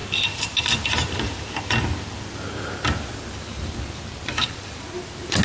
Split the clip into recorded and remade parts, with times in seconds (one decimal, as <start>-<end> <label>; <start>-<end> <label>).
0.0-5.4 recorded